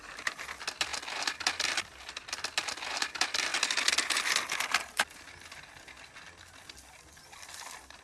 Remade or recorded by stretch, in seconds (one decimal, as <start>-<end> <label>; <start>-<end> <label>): 0.0-0.9 remade; 0.9-2.0 recorded; 2.0-3.5 remade; 3.5-7.2 recorded; 7.2-8.0 remade